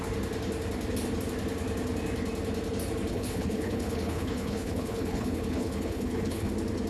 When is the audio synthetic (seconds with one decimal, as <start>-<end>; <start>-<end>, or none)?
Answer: 3.1-6.5